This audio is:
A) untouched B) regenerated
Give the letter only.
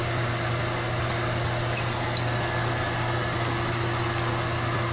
A